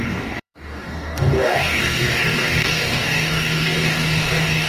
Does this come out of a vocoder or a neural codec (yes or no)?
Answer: yes